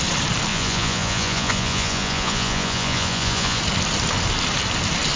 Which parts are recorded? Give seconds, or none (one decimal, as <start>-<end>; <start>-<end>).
0.0-0.5; 3.6-5.2